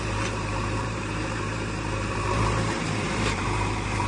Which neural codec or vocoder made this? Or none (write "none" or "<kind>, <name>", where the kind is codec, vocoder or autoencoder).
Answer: vocoder, BigVGAN v2